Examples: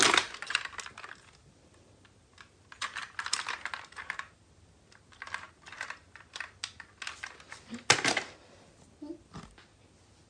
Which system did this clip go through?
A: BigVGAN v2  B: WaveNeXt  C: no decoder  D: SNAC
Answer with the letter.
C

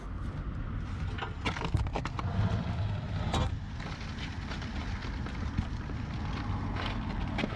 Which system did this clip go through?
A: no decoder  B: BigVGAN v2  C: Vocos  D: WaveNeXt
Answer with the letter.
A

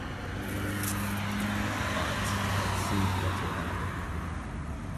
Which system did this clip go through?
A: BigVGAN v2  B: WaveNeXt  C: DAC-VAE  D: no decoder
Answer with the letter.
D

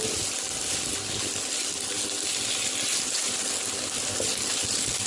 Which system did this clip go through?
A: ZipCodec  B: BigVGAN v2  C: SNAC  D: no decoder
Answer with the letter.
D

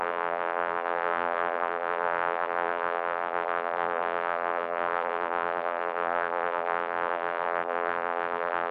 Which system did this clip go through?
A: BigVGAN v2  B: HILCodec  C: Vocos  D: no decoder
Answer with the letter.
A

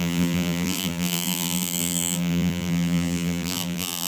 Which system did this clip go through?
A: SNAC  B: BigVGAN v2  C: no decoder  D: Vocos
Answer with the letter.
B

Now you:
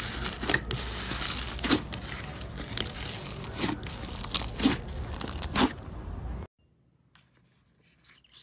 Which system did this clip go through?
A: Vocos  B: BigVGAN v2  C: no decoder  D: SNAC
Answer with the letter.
C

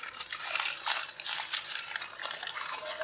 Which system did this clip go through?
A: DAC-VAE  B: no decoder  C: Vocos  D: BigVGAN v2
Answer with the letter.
D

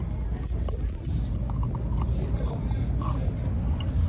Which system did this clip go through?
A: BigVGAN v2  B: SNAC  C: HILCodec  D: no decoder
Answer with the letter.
D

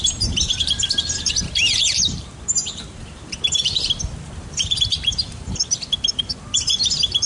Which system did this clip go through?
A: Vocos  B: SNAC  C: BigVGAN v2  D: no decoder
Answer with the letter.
C